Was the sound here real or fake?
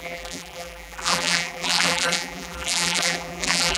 fake